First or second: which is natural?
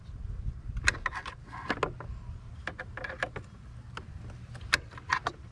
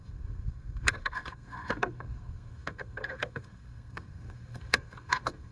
first